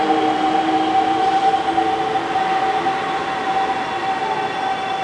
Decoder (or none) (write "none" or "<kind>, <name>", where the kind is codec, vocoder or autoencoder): none